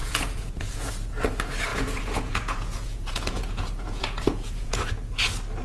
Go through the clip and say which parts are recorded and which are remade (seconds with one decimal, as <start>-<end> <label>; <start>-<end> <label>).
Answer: 0.0-0.9 remade; 0.9-1.7 recorded; 1.7-5.1 remade; 5.1-5.6 recorded